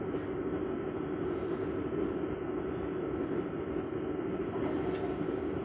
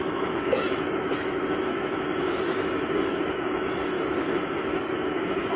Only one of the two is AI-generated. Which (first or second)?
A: second